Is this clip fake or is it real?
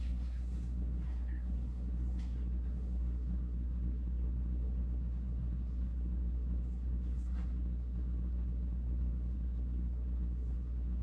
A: fake